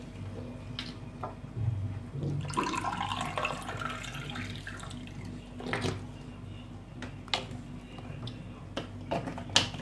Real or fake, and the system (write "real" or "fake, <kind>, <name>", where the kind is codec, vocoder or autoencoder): real